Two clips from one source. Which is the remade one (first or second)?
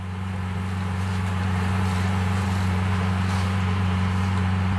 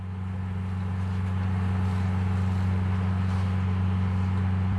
first